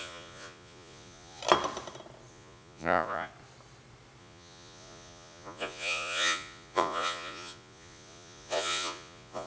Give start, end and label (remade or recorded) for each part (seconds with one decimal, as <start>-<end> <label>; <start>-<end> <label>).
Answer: 0.0-1.4 remade; 1.4-2.3 recorded; 2.3-3.3 remade; 3.3-4.2 recorded; 4.2-9.5 remade